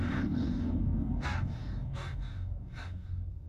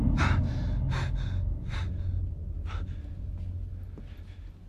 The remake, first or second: first